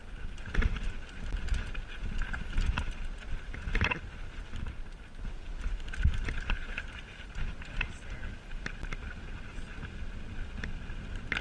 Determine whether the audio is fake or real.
real